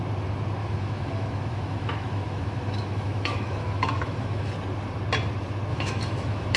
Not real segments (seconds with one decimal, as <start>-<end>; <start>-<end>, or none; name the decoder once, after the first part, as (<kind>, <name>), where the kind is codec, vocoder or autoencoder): 0.6-4.5 (autoencoder, DAC-VAE); 5.7-6.6